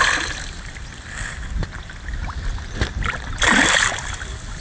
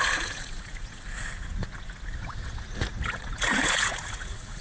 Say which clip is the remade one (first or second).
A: second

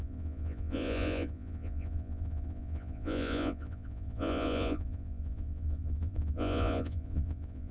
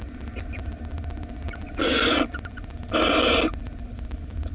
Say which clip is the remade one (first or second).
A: first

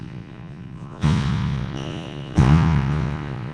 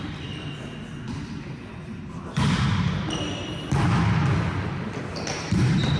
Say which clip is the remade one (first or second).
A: first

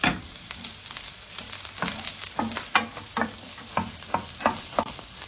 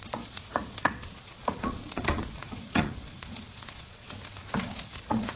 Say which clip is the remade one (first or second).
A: second